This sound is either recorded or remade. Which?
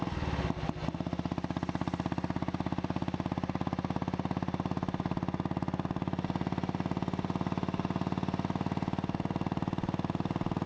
recorded